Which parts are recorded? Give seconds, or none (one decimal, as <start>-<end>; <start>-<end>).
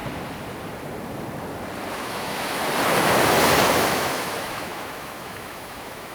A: 0.0-1.9; 2.6-3.9